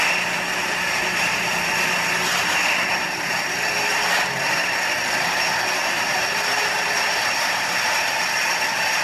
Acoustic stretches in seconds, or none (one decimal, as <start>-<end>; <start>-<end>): 0.0-5.8; 6.9-9.0